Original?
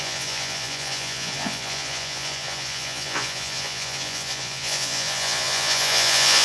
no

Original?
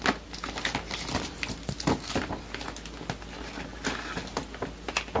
yes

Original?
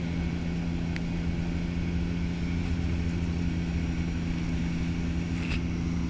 yes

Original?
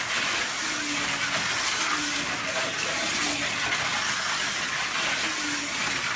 yes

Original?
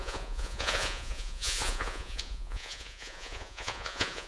no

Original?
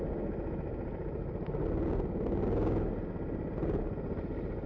yes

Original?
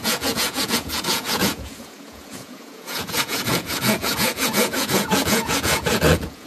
no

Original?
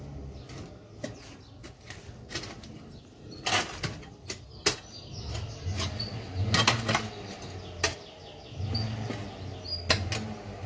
yes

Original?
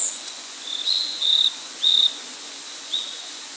no